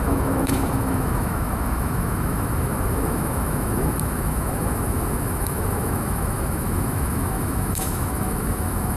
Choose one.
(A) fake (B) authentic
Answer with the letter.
A